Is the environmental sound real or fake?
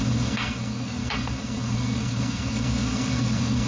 fake